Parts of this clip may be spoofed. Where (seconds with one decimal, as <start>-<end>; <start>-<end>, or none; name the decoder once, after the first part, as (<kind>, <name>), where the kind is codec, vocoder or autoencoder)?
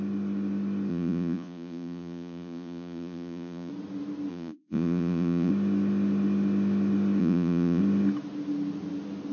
0.9-3.7 (vocoder, Vocos); 4.3-5.5; 7.2-7.8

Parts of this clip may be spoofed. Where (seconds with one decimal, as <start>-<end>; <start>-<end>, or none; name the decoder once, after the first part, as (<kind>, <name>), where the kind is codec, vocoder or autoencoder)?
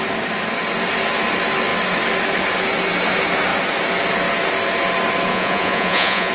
5.3-6.3 (vocoder, Vocos)